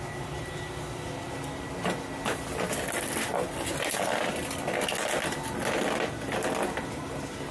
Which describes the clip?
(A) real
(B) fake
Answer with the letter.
A